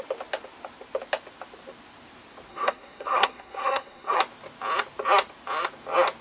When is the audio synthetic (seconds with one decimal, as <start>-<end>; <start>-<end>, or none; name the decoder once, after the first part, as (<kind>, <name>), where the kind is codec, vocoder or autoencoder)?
2.5-4.2 (codec, SNAC)